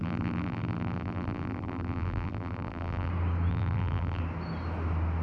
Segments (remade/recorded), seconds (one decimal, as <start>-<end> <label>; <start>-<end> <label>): 0.0-3.1 remade; 3.1-3.5 recorded; 3.5-4.2 remade; 4.2-5.2 recorded